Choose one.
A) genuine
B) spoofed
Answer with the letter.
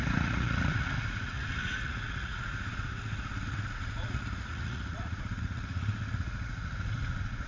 B